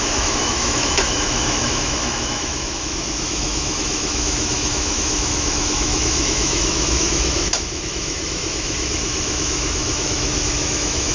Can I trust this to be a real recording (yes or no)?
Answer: no